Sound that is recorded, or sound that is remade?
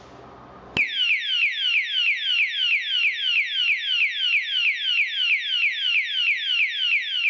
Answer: recorded